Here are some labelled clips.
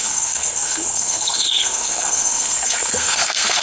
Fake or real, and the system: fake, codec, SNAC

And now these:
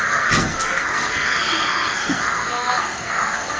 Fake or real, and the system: fake, codec, SNAC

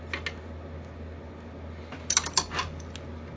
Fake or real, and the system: real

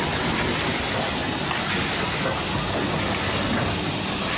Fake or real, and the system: real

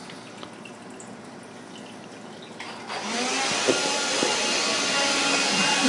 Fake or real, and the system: real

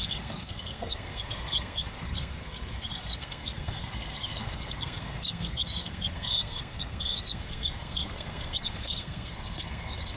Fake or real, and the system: fake, codec, SNAC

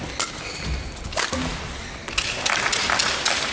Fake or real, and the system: real